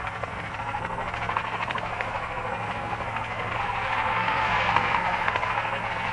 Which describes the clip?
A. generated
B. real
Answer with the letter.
A